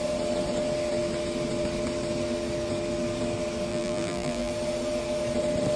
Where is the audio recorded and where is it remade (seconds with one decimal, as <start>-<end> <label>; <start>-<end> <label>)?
0.0-3.7 recorded; 3.7-4.5 remade; 4.5-5.8 recorded